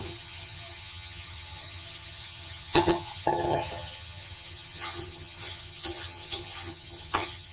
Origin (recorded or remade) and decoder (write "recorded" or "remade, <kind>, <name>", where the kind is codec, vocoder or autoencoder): remade, vocoder, HiFi-GAN